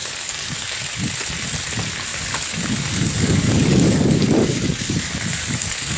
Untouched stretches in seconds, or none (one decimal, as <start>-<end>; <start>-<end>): 1.0-2.1